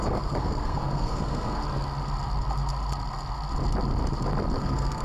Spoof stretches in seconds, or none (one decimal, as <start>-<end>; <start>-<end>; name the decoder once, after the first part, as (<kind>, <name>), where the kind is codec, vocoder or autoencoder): 0.0-1.6 (codec, SNAC); 4.6-5.0